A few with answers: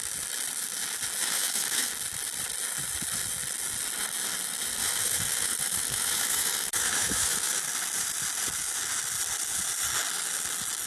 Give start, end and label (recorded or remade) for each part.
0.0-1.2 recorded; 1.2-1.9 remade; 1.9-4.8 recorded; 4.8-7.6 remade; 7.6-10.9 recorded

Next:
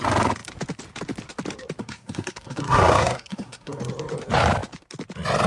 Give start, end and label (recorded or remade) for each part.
0.0-1.8 recorded; 1.8-3.8 remade; 3.8-5.5 recorded

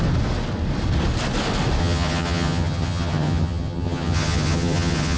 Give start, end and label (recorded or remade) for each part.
0.0-1.8 recorded; 1.8-5.2 remade

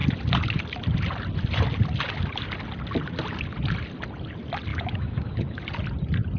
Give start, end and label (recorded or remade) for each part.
0.0-4.7 recorded; 4.7-5.6 remade; 5.6-6.4 recorded

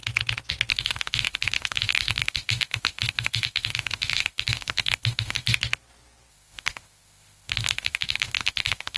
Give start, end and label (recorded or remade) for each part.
0.0-0.7 recorded; 0.7-5.5 remade; 5.5-6.3 recorded; 6.3-9.0 remade

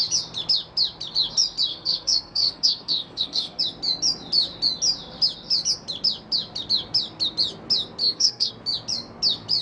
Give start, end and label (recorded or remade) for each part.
0.0-1.7 recorded; 1.7-3.6 remade; 3.6-8.0 recorded; 8.0-8.5 remade; 8.5-9.6 recorded